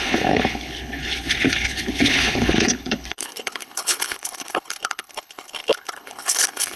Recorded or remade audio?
remade